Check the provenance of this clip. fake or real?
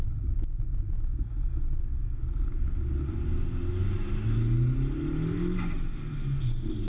real